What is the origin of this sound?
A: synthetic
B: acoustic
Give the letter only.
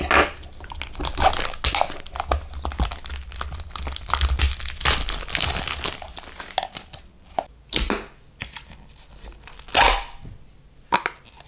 B